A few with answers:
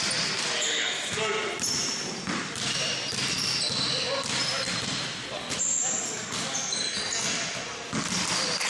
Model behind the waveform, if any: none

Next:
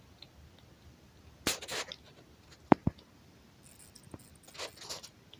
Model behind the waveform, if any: none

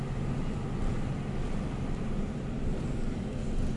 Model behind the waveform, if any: none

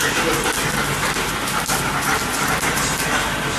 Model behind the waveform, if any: none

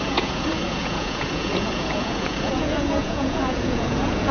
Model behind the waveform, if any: vocoder, Vocos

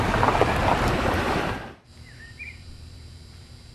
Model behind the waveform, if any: vocoder, BigVGAN v2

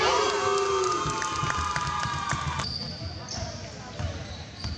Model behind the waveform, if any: none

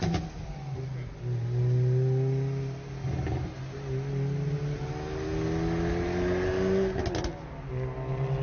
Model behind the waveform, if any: none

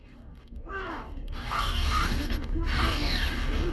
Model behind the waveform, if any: codec, DAC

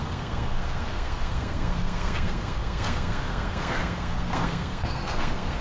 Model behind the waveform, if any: codec, SNAC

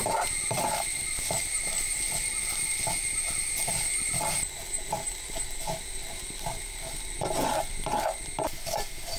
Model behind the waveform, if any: none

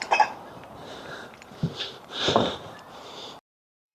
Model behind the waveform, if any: vocoder, BigVGAN v2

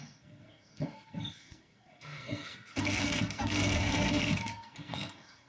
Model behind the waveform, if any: codec, SNAC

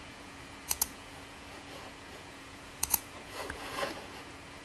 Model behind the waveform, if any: vocoder, Vocos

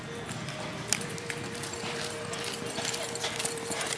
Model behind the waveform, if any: none